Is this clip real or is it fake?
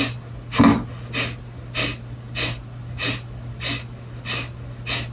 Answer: real